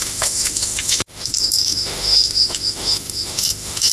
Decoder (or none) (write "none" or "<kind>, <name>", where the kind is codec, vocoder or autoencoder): autoencoder, DAC-VAE